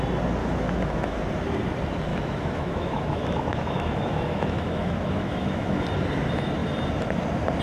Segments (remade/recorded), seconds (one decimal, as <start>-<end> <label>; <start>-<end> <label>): 0.0-0.4 recorded; 0.4-1.2 remade; 1.2-2.1 recorded; 2.1-5.8 remade; 5.8-7.6 recorded